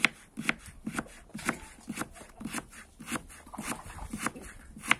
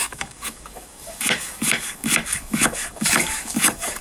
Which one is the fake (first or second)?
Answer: second